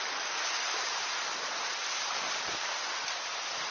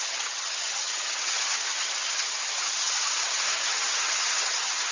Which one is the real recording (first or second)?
first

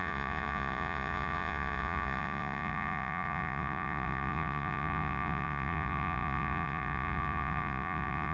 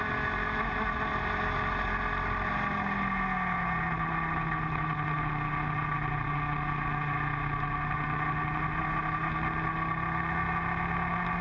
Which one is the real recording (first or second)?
second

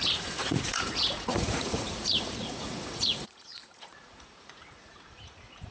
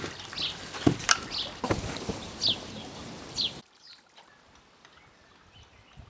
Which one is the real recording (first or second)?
second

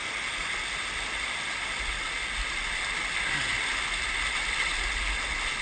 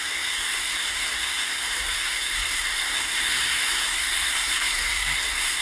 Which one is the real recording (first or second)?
first